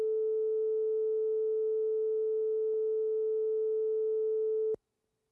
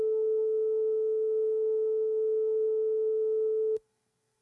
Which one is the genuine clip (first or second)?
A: first